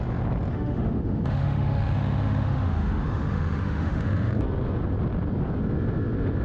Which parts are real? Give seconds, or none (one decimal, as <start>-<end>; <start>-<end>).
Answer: 0.0-0.5; 4.3-6.4